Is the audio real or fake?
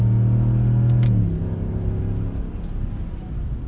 real